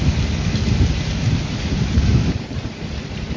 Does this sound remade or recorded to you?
recorded